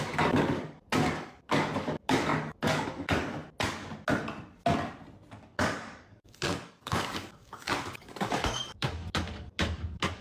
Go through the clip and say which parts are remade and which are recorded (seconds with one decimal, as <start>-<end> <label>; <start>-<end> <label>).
0.0-3.4 remade; 3.4-5.3 recorded; 5.3-10.2 remade